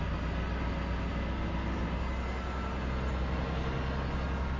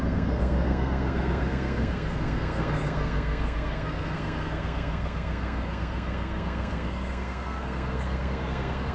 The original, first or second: first